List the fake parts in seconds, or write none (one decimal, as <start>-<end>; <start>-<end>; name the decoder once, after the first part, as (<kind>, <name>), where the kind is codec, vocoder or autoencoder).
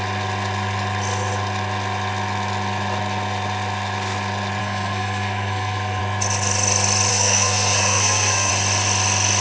4.6-6.0 (codec, SNAC); 7.1-8.5